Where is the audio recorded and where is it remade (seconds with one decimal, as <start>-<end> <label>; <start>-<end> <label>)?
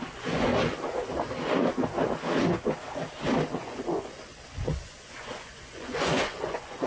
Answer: 0.0-0.5 remade; 0.5-3.5 recorded; 3.5-6.9 remade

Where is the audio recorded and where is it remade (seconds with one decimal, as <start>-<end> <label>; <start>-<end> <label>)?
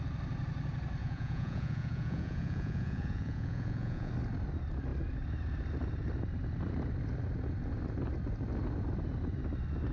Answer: 0.0-1.0 recorded; 1.0-4.1 remade; 4.1-9.9 recorded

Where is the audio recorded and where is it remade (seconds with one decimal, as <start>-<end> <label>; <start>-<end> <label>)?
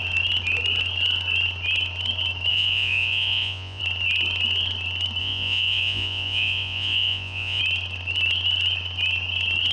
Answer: 0.0-2.5 recorded; 2.5-3.8 remade; 3.8-5.2 recorded; 5.2-7.6 remade; 7.6-9.7 recorded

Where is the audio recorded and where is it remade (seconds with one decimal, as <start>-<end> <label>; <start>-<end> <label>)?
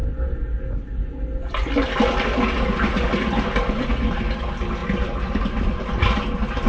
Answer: 0.0-6.7 recorded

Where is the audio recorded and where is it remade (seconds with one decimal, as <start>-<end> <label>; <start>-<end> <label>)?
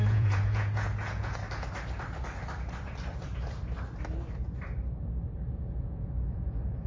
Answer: 0.0-1.4 remade; 1.4-5.5 recorded; 5.5-6.9 remade